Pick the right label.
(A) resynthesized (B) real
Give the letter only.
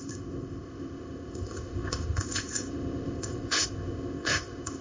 A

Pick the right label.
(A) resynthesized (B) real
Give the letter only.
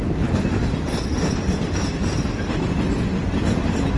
B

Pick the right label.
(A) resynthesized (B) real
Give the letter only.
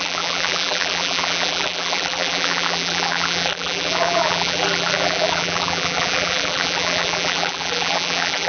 A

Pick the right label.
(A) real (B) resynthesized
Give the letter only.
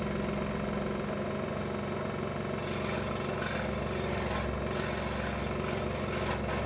A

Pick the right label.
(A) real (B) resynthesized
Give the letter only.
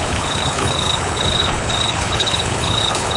B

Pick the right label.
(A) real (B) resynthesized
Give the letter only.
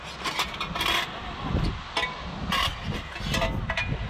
A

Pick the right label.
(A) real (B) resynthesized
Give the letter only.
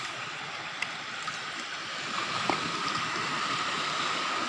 A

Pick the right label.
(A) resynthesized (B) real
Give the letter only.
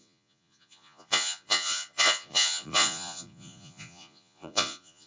A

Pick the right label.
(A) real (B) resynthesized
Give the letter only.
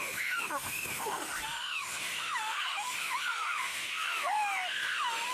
B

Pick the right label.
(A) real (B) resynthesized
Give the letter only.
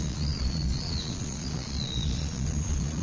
B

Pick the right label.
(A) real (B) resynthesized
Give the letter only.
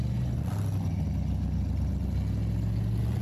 A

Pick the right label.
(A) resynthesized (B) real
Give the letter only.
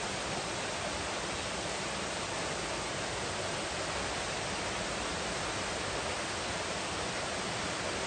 B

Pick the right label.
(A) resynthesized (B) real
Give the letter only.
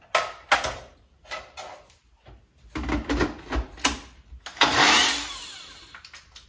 B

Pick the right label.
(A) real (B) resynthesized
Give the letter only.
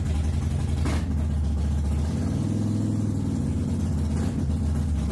A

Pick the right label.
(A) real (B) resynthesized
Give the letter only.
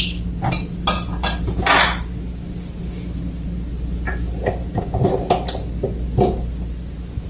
A